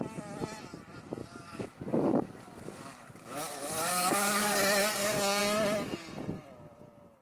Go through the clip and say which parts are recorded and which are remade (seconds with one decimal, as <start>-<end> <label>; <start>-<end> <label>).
0.0-1.2 recorded; 1.2-5.4 remade; 5.4-7.2 recorded